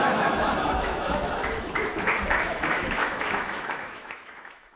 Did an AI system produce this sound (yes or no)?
yes